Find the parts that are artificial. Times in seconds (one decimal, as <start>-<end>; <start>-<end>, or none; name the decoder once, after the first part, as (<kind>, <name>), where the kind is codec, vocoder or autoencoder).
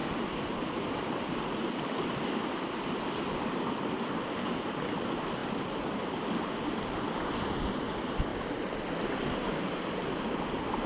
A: 9.5-10.0 (vocoder, BigVGAN v2)